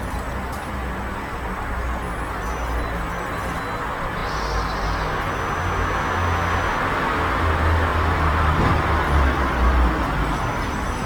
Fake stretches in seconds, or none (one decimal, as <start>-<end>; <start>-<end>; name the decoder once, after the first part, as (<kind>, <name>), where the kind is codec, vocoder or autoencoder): 7.9-11.1 (vocoder, BigVGAN v2)